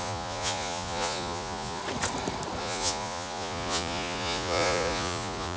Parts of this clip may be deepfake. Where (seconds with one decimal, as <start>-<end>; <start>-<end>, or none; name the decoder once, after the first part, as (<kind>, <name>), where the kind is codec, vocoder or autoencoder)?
0.0-1.8 (vocoder, Vocos); 2.6-5.6